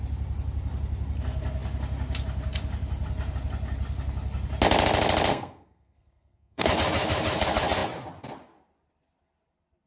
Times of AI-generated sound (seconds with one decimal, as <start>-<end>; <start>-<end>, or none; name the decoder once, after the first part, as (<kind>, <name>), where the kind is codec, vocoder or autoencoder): 5.3-6.7 (codec, SNAC)